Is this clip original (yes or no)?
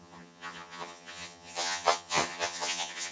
no